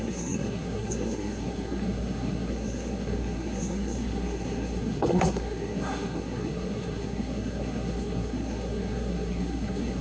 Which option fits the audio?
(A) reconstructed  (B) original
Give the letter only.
A